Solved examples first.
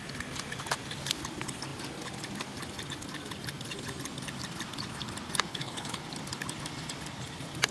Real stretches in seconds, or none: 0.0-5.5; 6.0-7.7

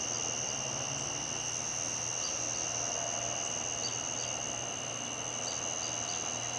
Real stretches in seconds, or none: 0.0-6.6

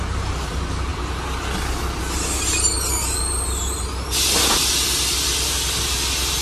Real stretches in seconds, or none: 0.0-6.4

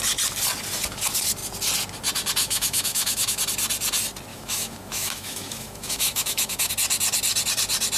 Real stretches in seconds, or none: 0.0-2.4; 3.4-4.3; 6.7-8.0

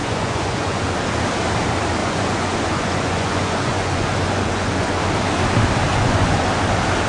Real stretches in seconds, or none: 0.8-2.0; 5.0-5.9; 6.4-7.1

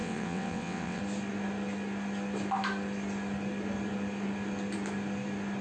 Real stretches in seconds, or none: 1.0-5.6

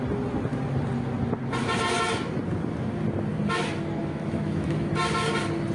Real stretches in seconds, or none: 0.0-4.0; 4.9-5.7

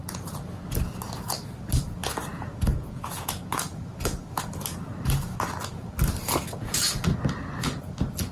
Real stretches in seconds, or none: 0.0-2.7; 3.3-8.3